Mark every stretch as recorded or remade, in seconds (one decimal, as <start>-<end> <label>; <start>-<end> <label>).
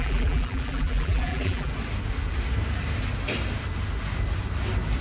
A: 0.0-1.7 remade; 1.7-5.0 recorded